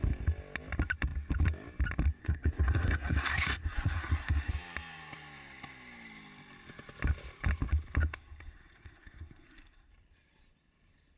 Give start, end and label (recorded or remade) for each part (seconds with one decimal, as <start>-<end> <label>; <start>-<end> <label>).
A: 0.0-2.2 recorded; 2.2-4.5 remade; 4.5-8.0 recorded; 8.0-9.9 remade; 9.9-11.2 recorded